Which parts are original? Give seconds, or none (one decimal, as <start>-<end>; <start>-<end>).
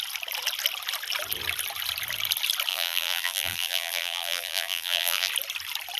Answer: 0.0-2.7; 5.3-6.0